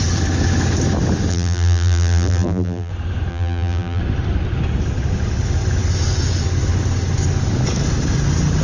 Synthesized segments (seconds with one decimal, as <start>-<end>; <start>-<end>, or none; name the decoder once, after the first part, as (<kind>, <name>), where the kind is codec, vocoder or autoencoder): 1.3-2.9 (vocoder, BigVGAN v2); 3.3-4.0